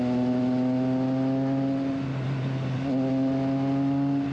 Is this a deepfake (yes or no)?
no